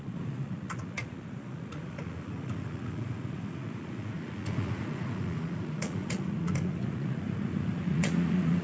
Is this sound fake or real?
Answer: fake